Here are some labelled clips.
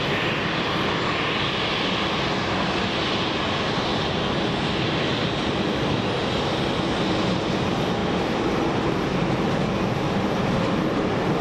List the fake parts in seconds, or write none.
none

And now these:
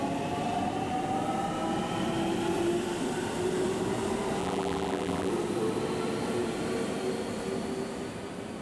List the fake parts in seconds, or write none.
4.4-5.3

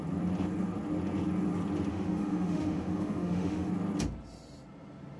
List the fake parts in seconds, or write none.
1.9-3.7

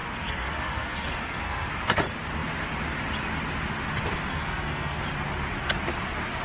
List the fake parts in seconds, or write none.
0.0-1.7; 4.3-5.0

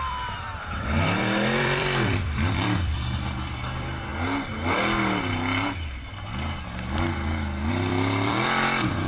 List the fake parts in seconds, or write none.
0.0-4.1; 7.7-9.1